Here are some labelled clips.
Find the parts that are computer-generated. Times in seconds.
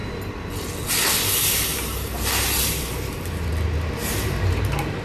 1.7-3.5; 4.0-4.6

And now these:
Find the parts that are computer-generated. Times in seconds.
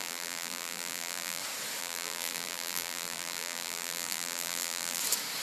0.0-1.4; 1.8-5.0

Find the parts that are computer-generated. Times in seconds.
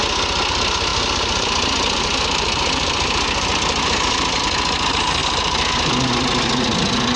0.9-4.4; 5.2-6.1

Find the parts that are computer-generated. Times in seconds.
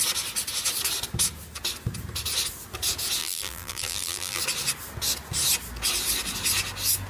3.2-4.4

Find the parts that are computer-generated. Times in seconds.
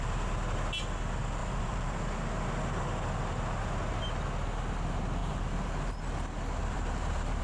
1.4-2.0; 5.2-6.0; 6.6-7.4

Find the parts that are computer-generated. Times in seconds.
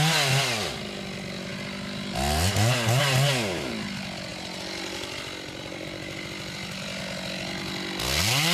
4.3-7.0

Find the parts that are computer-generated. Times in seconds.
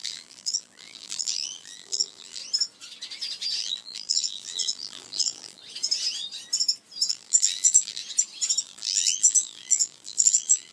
0.0-2.4; 3.6-5.6; 7.1-8.0; 8.6-10.7